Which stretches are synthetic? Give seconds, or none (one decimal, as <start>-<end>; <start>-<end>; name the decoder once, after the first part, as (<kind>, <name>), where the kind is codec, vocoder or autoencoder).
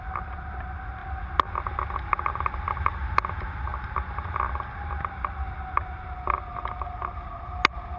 none